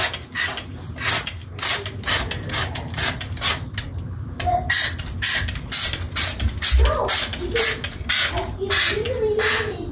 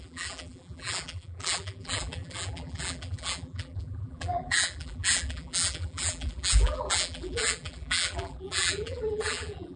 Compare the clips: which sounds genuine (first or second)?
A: first